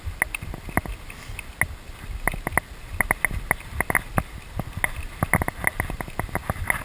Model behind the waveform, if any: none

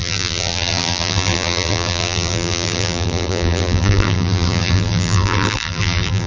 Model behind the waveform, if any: vocoder, BigVGAN v2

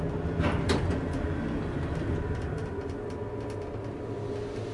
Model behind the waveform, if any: none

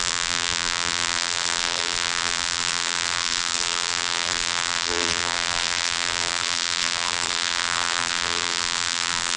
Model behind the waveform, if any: vocoder, BigVGAN v2